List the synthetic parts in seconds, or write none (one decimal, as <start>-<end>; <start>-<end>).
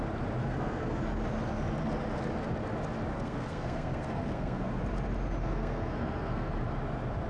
0.4-1.0; 3.1-4.8; 5.4-6.5